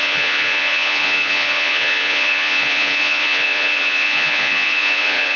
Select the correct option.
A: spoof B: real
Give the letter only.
A